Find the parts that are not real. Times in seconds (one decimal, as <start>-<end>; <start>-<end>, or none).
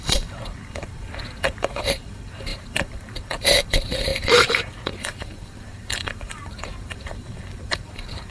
0.0-8.3